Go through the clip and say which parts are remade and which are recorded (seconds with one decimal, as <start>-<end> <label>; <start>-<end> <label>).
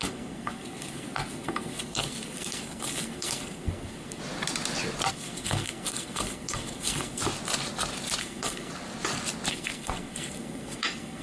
0.0-4.2 remade; 4.2-5.1 recorded; 5.1-7.2 remade; 7.2-8.2 recorded; 8.2-8.7 remade; 8.7-9.5 recorded; 9.5-11.2 remade